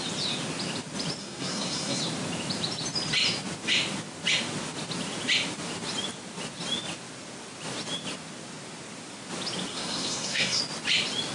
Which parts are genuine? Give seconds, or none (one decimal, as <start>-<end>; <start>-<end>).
0.0-1.2; 2.0-9.7; 10.6-11.3

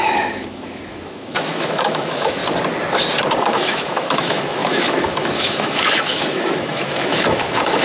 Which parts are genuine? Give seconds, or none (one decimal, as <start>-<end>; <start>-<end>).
2.4-3.4

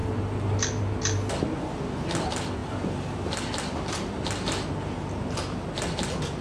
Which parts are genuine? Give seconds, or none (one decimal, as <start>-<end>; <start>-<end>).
0.0-6.4

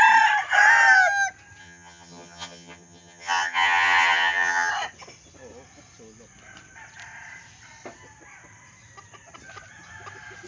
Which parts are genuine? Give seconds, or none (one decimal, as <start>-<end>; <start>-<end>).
0.0-1.6; 4.7-10.5

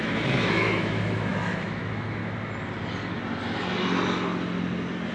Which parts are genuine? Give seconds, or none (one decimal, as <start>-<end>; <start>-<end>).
2.2-5.1

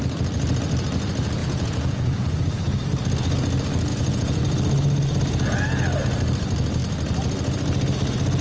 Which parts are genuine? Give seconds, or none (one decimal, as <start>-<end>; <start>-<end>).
0.0-1.4; 2.2-3.9; 4.4-8.4

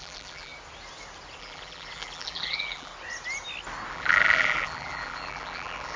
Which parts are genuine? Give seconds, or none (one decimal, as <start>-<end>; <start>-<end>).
0.5-1.4; 2.9-3.9